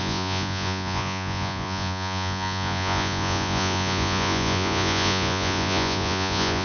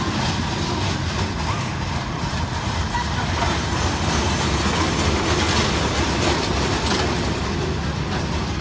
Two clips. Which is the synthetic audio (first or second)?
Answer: first